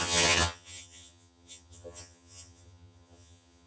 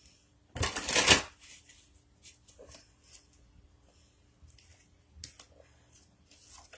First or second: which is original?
second